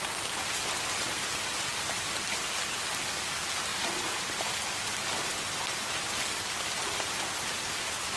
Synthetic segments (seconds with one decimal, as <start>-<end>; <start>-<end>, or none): 3.7-4.2